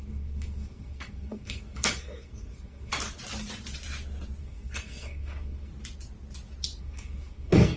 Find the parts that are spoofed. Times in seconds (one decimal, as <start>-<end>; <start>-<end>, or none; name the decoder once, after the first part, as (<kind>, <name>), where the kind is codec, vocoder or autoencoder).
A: 0.0-2.9 (codec, SNAC); 4.4-5.7; 6.8-7.8